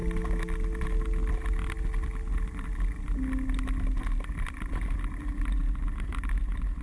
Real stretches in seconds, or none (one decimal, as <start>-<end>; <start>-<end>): 0.0-6.8